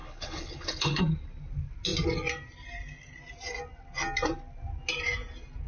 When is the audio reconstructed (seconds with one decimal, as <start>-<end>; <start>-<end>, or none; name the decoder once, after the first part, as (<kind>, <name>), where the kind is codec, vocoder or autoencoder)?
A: 0.0-1.0 (codec, HILCodec)